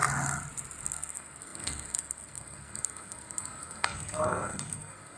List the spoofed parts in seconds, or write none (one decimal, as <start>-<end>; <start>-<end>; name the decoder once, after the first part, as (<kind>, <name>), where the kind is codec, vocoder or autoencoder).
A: 0.8-5.2 (codec, SNAC)